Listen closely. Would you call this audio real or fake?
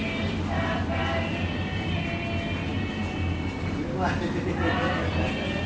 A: real